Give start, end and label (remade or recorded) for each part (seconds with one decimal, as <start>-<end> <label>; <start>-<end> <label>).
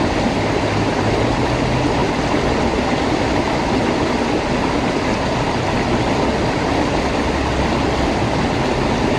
0.0-9.2 recorded